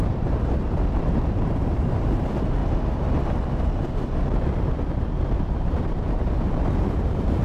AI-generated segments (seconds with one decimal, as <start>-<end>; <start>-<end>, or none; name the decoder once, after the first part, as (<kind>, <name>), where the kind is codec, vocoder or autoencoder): 0.0-2.6 (vocoder, BigVGAN v2); 3.9-7.4